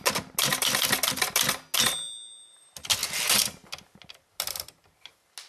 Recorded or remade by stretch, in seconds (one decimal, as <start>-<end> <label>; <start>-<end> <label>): 0.0-5.5 recorded